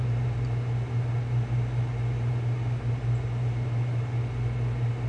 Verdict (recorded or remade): recorded